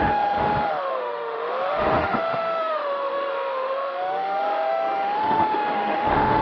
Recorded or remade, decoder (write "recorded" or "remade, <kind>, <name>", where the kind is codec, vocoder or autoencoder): remade, autoencoder, DAC-VAE